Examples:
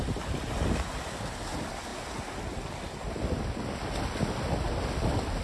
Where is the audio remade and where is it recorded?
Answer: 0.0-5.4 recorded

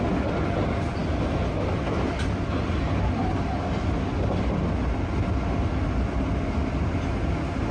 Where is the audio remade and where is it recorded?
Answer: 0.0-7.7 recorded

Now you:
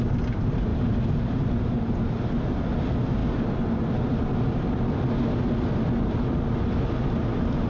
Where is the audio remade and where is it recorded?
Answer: 0.0-7.7 recorded

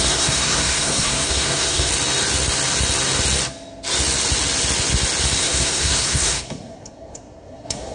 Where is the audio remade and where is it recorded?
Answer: 0.0-1.9 remade; 1.9-5.4 recorded; 5.4-7.9 remade